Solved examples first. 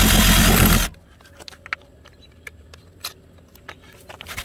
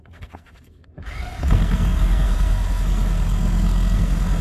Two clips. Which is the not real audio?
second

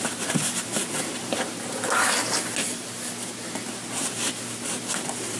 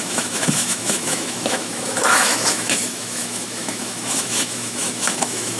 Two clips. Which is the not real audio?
second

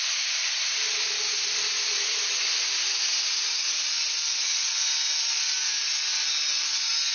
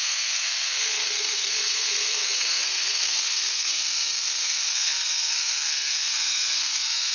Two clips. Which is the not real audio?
second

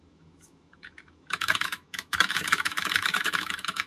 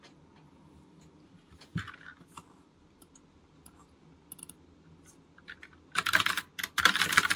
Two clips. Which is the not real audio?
first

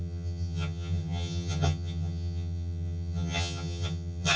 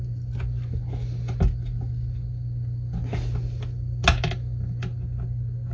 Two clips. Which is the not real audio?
first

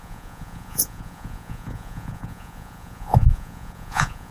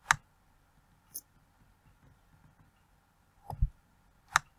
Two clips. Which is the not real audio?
first